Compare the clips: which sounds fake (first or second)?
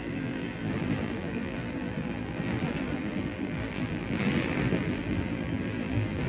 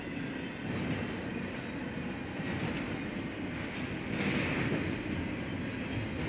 first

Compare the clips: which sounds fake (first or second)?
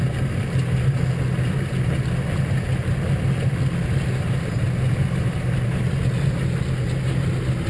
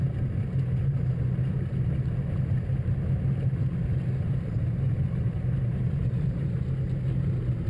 second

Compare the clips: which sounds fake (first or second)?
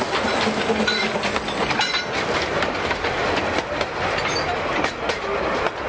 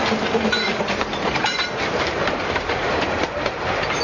second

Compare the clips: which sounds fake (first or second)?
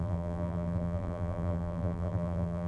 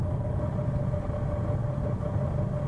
first